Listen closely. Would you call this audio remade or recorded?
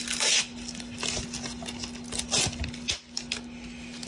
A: recorded